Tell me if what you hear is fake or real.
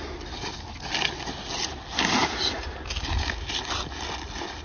real